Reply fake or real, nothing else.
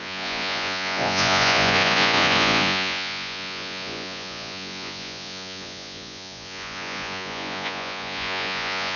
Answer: fake